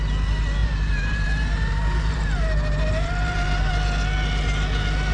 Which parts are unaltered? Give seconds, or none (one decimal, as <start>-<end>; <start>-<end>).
0.0-0.6; 3.7-5.1